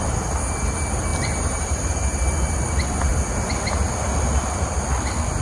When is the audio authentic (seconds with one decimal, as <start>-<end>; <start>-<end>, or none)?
0.0-1.1; 2.2-5.4